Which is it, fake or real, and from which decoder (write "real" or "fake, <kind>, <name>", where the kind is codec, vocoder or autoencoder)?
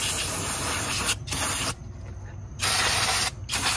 real